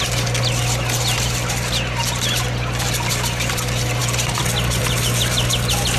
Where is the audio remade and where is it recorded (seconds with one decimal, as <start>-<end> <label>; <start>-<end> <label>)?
0.0-6.0 recorded

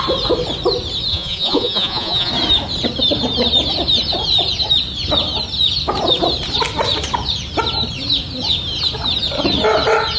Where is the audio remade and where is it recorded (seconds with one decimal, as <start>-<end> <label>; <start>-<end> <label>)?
0.0-1.1 recorded; 1.1-2.3 remade; 2.3-10.2 recorded

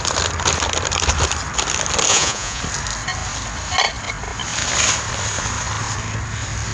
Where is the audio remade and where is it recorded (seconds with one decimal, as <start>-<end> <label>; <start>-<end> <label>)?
0.0-2.1 recorded; 2.1-2.6 remade; 2.6-6.7 recorded

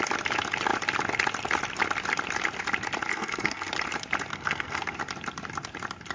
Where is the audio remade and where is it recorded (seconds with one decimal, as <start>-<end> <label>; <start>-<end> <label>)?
0.0-3.1 recorded; 3.1-3.7 remade; 3.7-4.3 recorded; 4.3-5.0 remade; 5.0-6.1 recorded

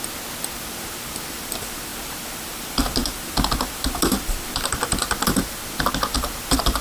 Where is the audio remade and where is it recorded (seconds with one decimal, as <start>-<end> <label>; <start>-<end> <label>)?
0.0-0.5 recorded; 0.5-6.8 remade

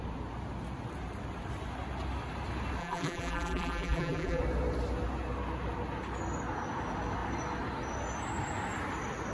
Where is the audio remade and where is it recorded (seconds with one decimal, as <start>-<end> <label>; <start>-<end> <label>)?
0.0-2.8 recorded; 2.8-4.4 remade; 4.4-9.3 recorded

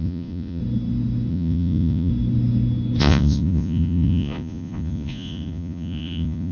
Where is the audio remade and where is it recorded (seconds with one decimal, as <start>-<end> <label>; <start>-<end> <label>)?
0.0-0.6 remade; 0.6-1.3 recorded; 1.3-2.1 remade; 2.1-3.0 recorded; 3.0-6.5 remade